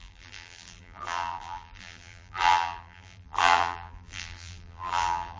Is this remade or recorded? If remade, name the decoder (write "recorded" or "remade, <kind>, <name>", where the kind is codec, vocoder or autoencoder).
remade, vocoder, BigVGAN v2